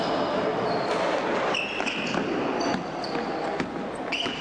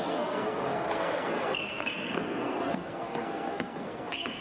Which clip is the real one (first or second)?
first